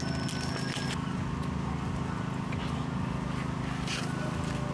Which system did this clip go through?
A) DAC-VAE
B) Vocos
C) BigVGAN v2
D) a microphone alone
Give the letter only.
D